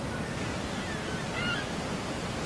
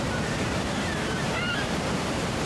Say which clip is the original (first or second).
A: first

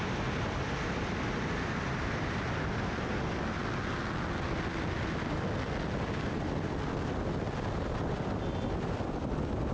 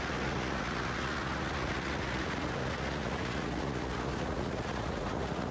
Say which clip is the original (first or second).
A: first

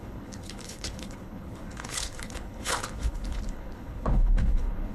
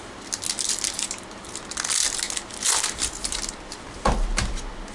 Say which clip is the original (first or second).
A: second